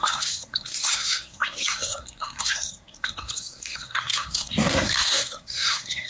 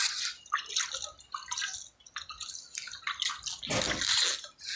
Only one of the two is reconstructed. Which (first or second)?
first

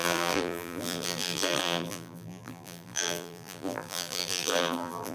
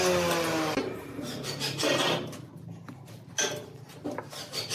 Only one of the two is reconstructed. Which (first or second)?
first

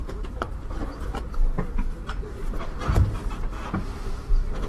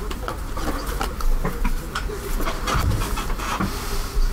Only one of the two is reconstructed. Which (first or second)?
first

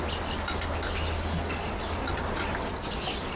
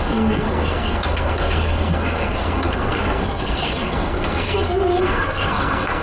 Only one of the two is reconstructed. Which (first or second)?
second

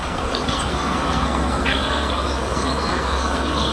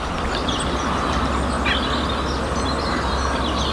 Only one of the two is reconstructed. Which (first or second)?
first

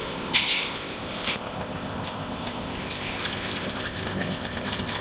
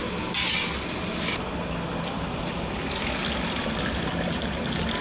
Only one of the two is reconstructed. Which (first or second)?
first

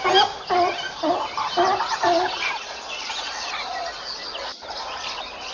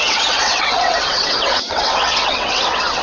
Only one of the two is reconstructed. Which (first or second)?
second